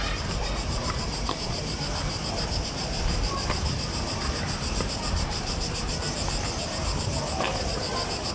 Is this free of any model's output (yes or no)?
no